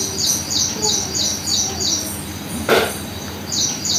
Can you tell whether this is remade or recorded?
recorded